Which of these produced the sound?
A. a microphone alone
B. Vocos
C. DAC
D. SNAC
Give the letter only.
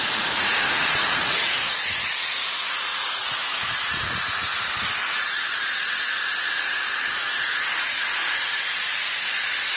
B